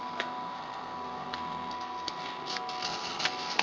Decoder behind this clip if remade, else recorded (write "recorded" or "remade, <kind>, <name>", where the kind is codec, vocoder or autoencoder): remade, codec, SNAC